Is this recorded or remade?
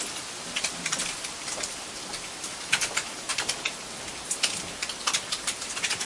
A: remade